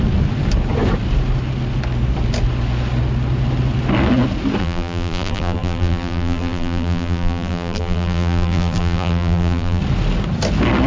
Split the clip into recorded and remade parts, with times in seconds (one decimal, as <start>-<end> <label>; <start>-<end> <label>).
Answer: 0.0-4.6 recorded; 4.6-9.8 remade; 9.8-10.9 recorded